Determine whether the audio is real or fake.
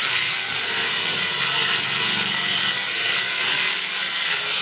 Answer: fake